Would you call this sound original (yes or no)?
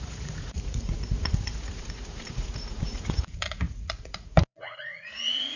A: no